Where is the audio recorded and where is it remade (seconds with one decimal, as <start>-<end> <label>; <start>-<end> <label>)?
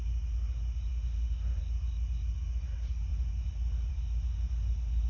0.0-0.9 recorded; 0.9-1.6 remade; 1.6-5.1 recorded